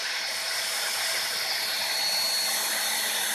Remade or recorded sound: recorded